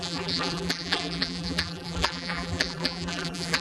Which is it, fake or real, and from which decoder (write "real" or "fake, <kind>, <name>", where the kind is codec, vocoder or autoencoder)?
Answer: fake, vocoder, BigVGAN v2